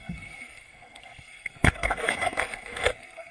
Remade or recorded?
remade